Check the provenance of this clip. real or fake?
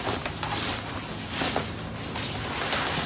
real